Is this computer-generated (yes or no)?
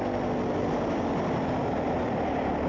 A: no